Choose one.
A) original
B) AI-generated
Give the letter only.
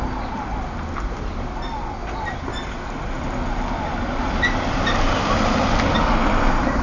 A